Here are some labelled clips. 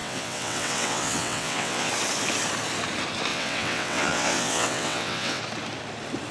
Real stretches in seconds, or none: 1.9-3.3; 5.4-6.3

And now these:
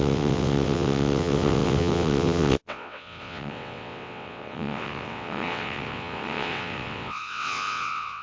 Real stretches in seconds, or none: none

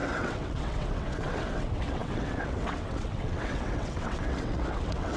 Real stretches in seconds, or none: none

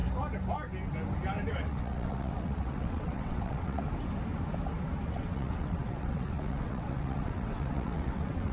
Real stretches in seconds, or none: 0.0-1.5; 3.8-5.1

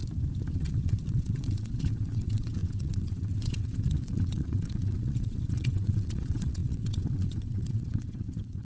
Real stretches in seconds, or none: 0.0-0.5